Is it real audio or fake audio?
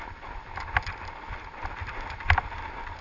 real